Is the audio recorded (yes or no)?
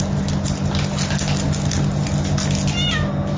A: yes